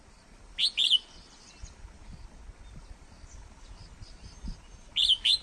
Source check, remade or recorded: recorded